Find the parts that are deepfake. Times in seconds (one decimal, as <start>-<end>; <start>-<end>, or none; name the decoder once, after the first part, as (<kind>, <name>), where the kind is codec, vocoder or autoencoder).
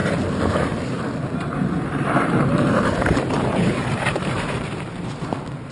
0.0-1.0 (vocoder, BigVGAN v2); 1.9-5.3